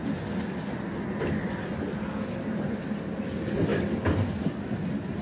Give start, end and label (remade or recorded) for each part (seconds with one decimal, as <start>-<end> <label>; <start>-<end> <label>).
0.0-5.2 recorded